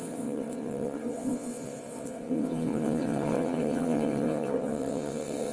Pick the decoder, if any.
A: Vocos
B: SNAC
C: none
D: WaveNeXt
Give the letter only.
D